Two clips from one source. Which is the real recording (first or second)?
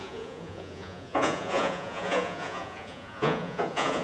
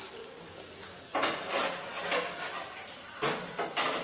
second